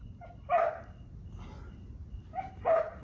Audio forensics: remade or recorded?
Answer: recorded